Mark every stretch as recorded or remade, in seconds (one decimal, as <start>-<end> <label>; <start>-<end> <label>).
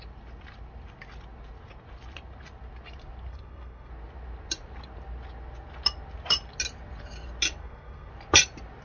0.0-3.3 recorded; 3.3-3.9 remade; 3.9-7.6 recorded; 7.6-8.1 remade; 8.1-8.8 recorded